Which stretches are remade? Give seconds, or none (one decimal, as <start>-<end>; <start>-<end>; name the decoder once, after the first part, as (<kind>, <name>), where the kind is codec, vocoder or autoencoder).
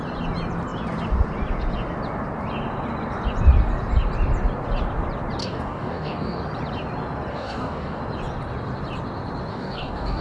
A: 5.4-6.4 (codec, DAC); 7.3-8.0; 9.5-10.2